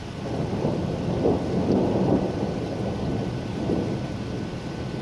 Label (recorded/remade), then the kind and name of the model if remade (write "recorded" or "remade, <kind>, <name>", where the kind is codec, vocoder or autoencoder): remade, vocoder, BigVGAN v2